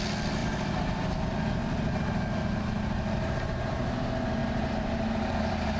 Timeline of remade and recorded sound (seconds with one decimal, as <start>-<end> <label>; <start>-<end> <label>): 0.0-0.4 recorded; 0.4-1.1 remade; 1.1-4.4 recorded; 4.4-5.8 remade